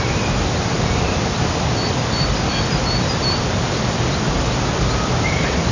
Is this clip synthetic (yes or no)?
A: no